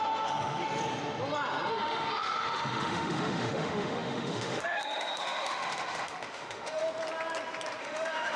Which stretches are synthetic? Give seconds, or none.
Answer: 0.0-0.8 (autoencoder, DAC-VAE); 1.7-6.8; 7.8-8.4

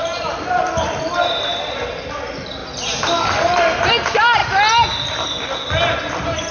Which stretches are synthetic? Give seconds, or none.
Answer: none

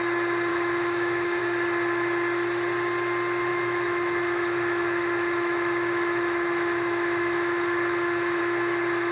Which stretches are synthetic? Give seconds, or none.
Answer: 0.5-1.4 (autoencoder, DAC-VAE); 3.5-8.4

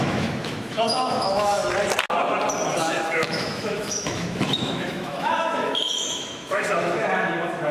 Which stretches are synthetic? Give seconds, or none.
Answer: 0.0-1.6 (autoencoder, DAC-VAE); 2.8-7.7

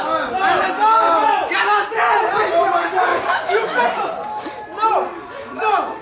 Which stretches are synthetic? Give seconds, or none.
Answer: 3.1-3.8 (autoencoder, DAC-VAE)

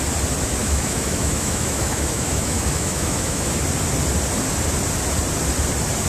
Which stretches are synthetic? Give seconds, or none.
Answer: 0.6-3.6 (autoencoder, DAC-VAE)

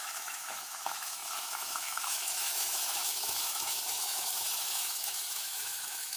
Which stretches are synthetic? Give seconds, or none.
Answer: 0.0-6.2 (autoencoder, DAC-VAE)